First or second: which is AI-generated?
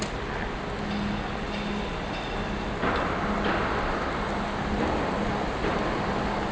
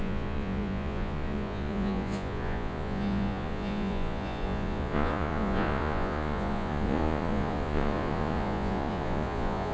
second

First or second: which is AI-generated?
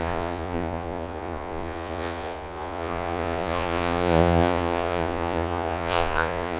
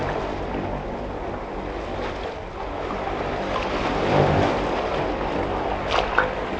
first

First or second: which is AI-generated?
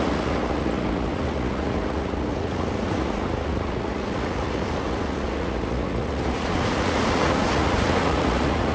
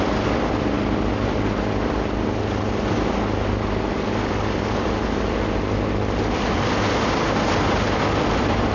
first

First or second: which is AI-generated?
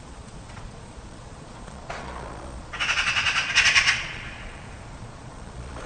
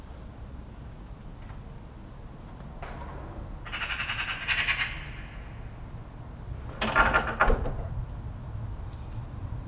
first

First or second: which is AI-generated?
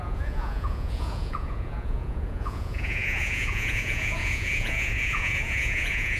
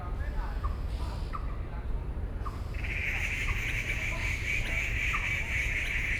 first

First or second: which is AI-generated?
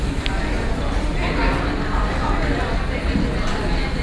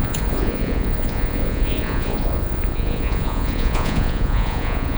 second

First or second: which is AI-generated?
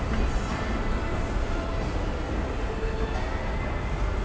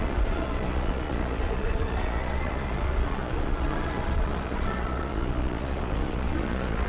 second